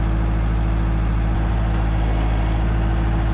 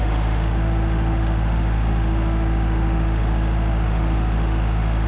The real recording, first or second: first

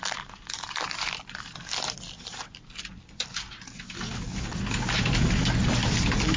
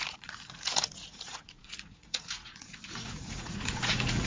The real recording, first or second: first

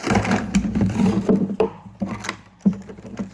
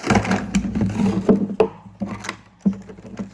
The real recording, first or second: second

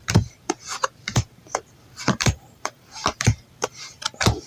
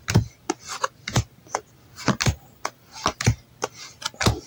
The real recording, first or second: second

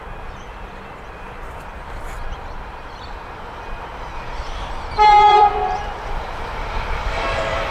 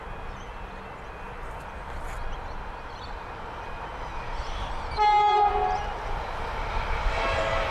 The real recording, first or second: second